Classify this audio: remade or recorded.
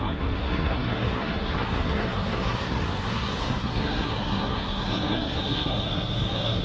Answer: remade